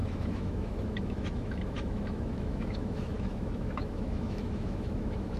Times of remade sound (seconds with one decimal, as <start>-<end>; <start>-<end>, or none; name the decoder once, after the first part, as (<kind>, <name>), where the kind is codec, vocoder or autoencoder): 0.0-5.4 (autoencoder, DAC-VAE)